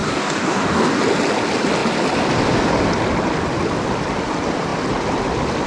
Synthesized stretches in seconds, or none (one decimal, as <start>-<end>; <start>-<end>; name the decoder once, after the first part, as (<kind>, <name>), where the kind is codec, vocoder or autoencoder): 0.0-1.0 (codec, DAC)